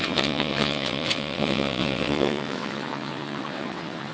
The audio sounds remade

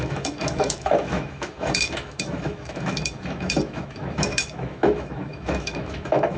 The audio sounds remade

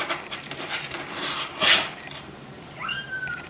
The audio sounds remade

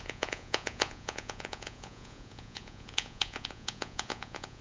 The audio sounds remade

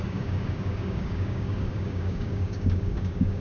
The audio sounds remade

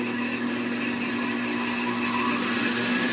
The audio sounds recorded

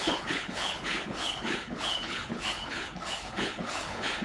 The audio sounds remade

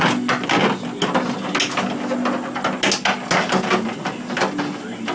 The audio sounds recorded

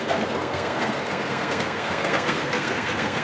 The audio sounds remade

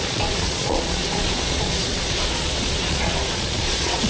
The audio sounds remade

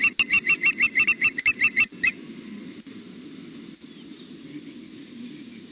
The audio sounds recorded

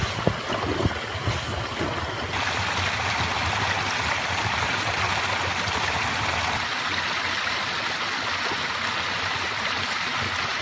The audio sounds recorded